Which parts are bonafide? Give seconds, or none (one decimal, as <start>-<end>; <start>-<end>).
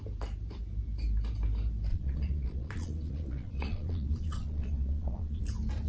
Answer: 0.0-1.9; 5.4-5.9